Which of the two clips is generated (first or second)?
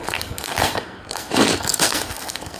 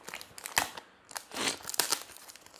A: first